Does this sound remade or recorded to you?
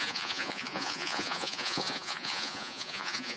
remade